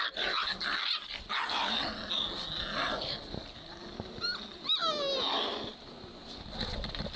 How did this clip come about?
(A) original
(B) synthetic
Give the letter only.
A